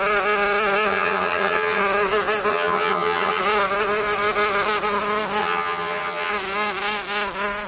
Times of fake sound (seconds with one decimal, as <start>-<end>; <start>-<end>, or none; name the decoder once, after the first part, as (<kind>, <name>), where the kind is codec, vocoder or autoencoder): 0.9-1.8 (vocoder, HiFi-GAN); 2.5-3.4; 5.4-6.3